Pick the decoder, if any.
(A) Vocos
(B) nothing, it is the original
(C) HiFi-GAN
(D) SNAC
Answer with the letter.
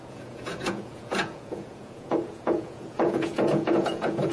A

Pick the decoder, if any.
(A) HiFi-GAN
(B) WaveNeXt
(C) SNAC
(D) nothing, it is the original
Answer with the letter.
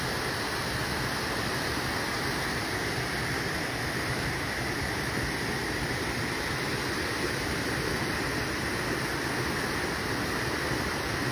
D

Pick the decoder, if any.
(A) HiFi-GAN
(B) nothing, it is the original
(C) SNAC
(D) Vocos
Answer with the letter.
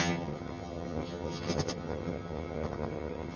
A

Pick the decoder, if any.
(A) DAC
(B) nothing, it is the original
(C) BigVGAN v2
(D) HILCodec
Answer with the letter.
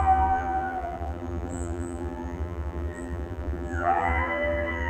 C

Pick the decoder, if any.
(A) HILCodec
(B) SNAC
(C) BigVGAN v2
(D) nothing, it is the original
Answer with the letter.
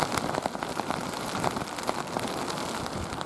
D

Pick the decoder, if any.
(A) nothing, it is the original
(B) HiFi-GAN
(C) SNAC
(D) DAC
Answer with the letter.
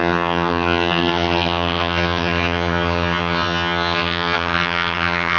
B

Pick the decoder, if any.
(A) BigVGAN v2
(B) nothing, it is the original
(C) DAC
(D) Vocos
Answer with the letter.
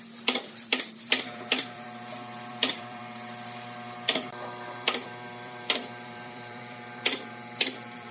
A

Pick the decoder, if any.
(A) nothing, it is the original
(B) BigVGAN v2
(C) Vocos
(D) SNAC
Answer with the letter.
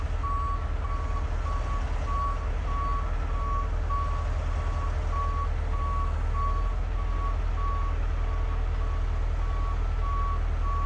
A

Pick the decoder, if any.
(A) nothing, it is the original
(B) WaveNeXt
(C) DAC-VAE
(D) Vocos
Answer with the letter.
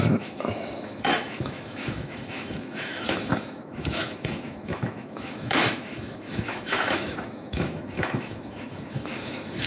C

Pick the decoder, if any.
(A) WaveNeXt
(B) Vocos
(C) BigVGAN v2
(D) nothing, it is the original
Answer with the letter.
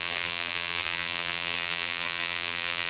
C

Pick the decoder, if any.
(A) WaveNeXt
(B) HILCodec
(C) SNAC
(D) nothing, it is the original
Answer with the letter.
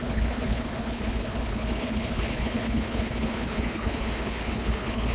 B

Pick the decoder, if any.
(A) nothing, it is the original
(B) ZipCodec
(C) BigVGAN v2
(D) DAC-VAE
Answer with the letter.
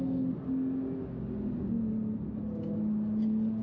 A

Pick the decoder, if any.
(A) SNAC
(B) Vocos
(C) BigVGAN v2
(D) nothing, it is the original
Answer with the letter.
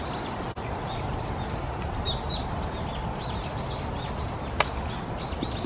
D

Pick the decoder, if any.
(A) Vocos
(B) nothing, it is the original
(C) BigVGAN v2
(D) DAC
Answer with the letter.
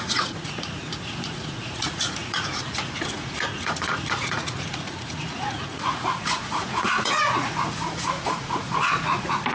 A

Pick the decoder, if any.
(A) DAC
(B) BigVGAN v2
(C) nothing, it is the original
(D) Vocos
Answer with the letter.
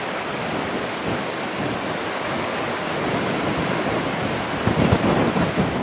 C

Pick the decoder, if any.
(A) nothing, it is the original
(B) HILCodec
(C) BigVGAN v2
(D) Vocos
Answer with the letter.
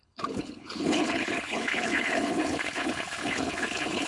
B